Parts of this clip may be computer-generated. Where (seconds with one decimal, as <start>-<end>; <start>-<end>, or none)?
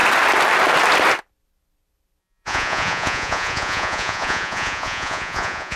2.2-5.8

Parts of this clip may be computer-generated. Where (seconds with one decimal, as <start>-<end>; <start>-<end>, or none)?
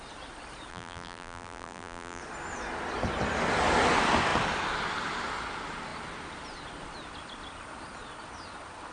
0.7-2.2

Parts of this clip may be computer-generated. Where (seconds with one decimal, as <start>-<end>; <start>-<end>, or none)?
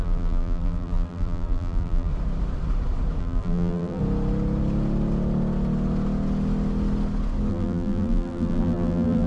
0.0-2.1; 3.2-4.0; 7.5-9.3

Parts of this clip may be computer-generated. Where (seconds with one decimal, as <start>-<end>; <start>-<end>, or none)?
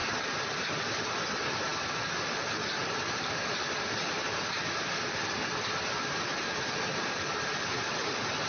0.0-1.1; 2.8-7.9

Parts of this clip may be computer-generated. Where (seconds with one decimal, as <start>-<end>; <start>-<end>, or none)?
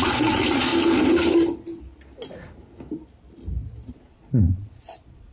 0.0-0.7; 3.9-5.3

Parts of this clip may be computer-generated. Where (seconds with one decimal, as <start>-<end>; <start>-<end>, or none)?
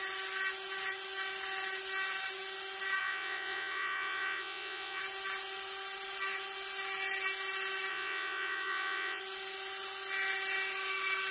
3.0-5.0; 7.9-9.2